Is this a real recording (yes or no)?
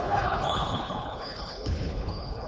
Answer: no